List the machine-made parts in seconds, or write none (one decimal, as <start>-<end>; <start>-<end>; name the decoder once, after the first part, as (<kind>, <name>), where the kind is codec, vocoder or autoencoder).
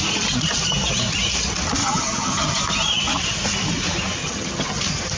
1.8-2.5 (vocoder, HiFi-GAN); 4.2-4.8